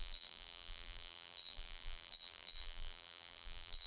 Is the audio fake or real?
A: fake